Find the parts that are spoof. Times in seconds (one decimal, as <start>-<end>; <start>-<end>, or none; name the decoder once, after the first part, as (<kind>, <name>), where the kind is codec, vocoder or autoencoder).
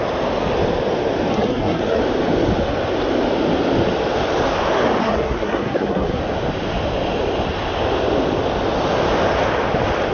1.3-2.0 (codec, SNAC); 5.0-6.2